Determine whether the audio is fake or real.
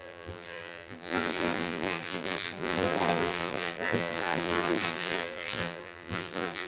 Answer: fake